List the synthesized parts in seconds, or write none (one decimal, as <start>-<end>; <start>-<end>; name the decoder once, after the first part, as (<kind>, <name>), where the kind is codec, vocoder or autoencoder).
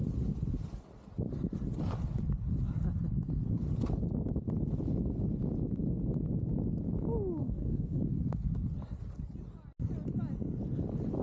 7.4-8.0 (codec, SNAC)